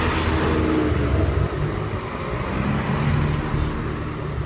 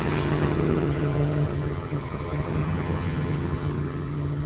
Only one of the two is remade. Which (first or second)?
second